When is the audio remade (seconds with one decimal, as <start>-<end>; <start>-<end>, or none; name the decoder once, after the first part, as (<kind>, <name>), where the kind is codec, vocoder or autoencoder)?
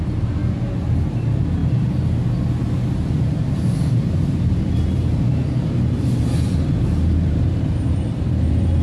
0.0-0.4 (vocoder, BigVGAN v2); 0.9-1.6; 3.2-8.8